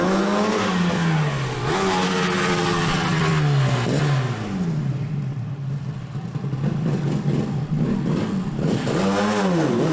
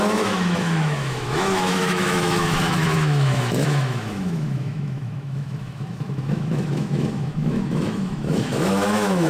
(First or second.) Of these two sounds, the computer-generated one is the second